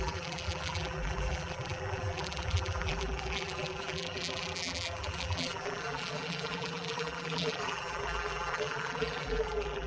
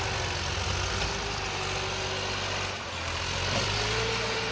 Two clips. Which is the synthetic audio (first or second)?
first